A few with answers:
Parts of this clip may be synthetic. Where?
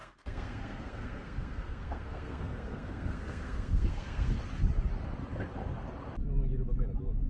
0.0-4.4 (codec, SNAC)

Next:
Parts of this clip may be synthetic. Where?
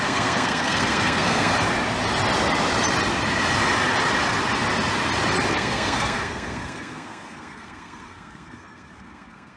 0.0-1.5 (codec, SNAC); 5.5-9.6